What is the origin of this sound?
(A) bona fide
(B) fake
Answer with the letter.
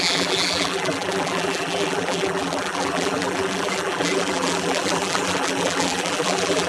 B